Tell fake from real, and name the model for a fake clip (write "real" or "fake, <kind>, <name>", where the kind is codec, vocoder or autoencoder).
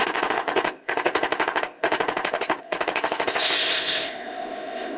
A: fake, codec, ZipCodec